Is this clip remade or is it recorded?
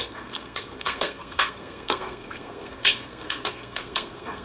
remade